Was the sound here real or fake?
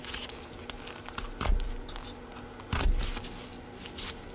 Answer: real